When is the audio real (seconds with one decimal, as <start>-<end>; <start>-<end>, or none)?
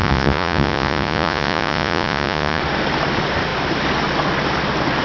2.6-5.0